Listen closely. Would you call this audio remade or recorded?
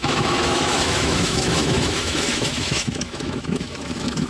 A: remade